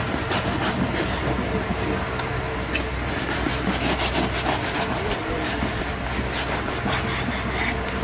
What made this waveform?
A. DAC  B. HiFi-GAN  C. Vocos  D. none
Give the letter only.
D